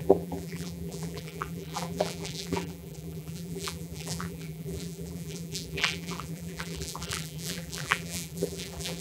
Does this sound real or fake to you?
fake